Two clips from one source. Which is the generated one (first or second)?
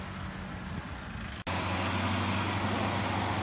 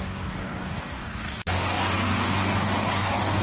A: second